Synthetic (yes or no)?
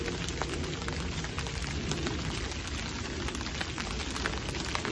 no